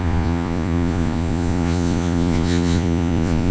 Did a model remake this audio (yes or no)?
yes